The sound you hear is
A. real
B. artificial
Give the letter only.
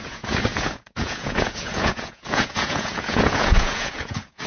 B